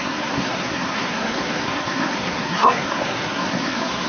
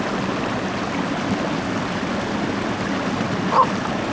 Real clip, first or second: second